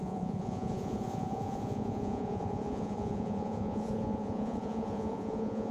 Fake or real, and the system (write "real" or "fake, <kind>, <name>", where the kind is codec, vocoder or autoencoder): fake, vocoder, Vocos